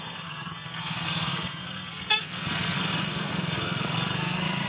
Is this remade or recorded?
remade